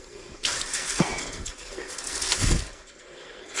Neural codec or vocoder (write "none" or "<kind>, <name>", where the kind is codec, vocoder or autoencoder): codec, SNAC